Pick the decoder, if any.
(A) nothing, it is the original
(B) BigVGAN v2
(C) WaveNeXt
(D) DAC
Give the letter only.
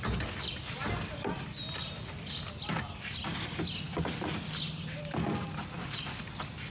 A